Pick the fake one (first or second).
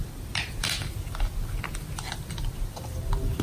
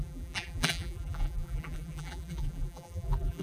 second